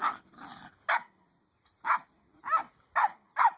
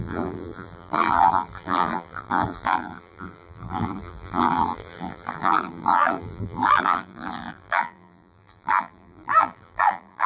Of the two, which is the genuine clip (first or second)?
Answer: first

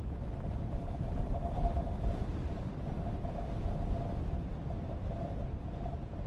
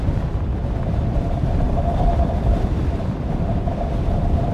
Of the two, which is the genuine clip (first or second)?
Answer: first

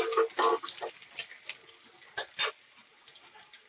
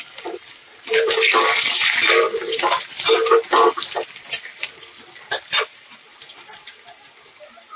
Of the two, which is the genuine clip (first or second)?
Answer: first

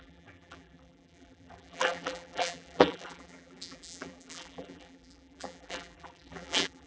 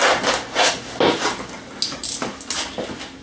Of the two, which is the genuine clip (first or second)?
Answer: second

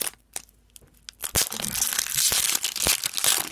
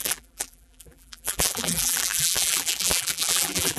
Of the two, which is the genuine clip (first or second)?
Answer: first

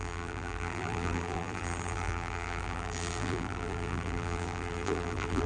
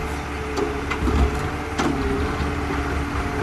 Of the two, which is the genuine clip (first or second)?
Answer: second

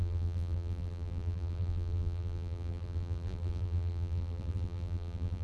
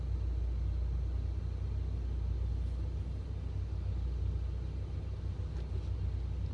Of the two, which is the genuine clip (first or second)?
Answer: second